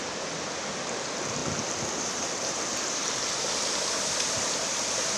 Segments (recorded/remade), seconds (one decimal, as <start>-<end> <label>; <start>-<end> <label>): 0.0-5.2 recorded

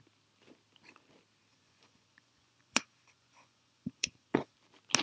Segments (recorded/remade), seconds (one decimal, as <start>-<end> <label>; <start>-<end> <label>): 0.0-1.5 recorded; 1.5-4.5 remade; 4.5-5.0 recorded

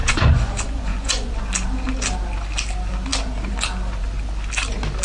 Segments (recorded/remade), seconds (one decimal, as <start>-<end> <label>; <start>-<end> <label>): 0.0-1.3 remade; 1.3-5.0 recorded

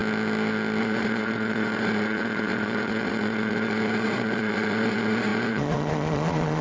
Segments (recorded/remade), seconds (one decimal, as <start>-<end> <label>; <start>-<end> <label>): 0.0-0.8 recorded; 0.8-6.6 remade

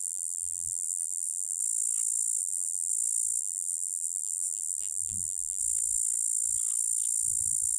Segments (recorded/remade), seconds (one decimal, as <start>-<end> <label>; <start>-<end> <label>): 0.0-1.6 remade; 1.6-2.4 recorded; 2.4-2.9 remade; 2.9-3.4 recorded; 3.4-5.6 remade; 5.6-7.8 recorded

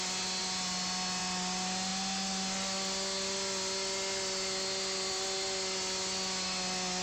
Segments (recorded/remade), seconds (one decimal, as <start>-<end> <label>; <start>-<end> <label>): 0.0-7.0 recorded

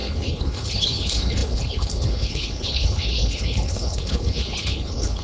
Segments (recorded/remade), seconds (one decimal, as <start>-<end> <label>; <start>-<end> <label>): 0.0-5.2 remade

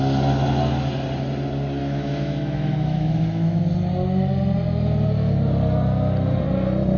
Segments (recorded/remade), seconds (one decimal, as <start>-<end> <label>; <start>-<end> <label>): 0.0-1.8 recorded; 1.8-3.6 remade; 3.6-7.0 recorded